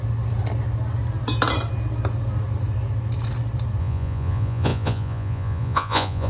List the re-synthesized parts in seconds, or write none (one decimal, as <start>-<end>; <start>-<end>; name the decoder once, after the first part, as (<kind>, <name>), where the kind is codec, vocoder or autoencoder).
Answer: 3.8-6.3 (vocoder, Vocos)

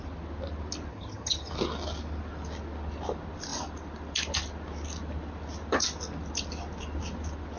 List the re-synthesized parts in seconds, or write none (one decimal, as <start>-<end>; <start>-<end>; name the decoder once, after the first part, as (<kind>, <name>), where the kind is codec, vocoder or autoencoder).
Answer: 0.9-1.5 (vocoder, HiFi-GAN)

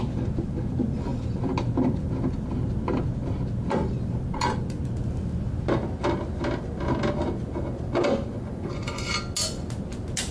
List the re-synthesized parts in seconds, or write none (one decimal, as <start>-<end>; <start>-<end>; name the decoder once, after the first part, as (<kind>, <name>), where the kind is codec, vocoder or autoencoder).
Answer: 8.3-9.1 (vocoder, Vocos)

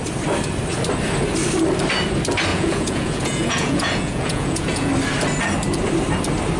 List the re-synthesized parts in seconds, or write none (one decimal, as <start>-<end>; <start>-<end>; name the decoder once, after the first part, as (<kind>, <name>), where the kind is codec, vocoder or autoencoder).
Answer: 2.5-4.9 (vocoder, Vocos)

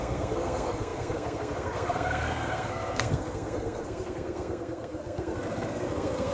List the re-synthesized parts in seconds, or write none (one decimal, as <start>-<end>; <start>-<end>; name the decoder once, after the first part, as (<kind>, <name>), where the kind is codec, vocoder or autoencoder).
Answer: 0.0-6.3 (codec, SNAC)

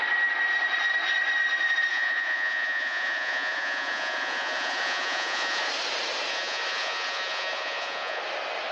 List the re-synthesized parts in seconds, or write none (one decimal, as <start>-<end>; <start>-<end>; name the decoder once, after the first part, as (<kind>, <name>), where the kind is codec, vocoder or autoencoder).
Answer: 1.9-5.7 (vocoder, Vocos); 6.3-8.2

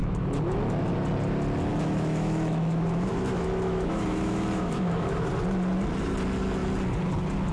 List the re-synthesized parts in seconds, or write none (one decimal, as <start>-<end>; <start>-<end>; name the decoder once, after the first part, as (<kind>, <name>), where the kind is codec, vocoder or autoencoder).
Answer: 0.0-0.9 (autoencoder, DAC-VAE); 1.7-5.3